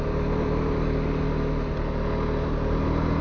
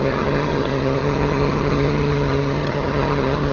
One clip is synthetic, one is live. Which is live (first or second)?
first